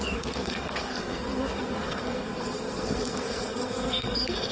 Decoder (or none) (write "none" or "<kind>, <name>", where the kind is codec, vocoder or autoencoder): codec, SNAC